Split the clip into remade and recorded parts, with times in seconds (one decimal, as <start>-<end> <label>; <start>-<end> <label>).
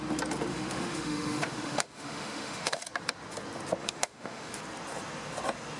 0.0-0.5 recorded; 0.5-2.8 remade; 2.8-3.8 recorded; 3.8-4.6 remade; 4.6-5.8 recorded